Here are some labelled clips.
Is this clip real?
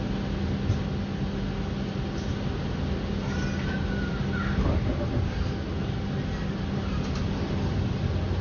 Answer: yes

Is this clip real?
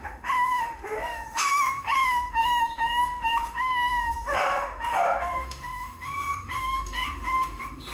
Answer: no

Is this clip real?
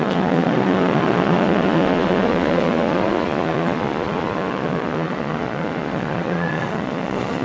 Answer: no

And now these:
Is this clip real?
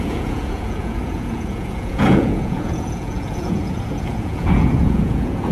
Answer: no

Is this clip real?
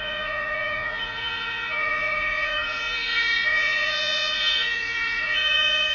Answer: no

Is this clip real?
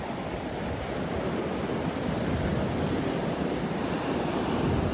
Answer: yes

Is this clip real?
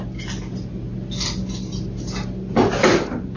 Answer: yes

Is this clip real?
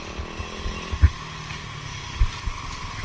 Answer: yes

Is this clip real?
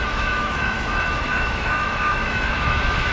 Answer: no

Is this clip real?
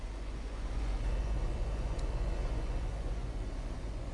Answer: no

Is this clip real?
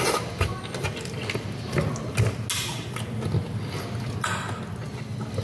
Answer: yes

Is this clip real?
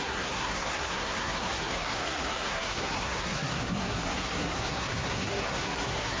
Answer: no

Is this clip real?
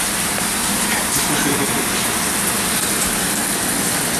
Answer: yes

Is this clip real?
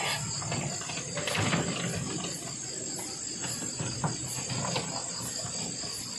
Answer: yes